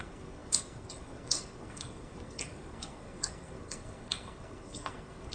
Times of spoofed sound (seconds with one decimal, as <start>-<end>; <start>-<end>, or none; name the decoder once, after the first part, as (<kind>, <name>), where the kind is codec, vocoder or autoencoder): 0.0-5.3 (codec, SNAC)